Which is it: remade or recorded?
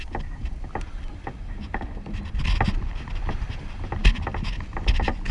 recorded